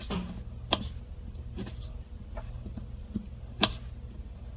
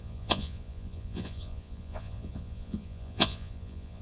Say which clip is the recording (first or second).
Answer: first